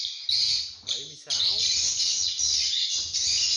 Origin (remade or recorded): recorded